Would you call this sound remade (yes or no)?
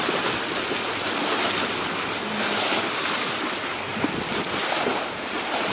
no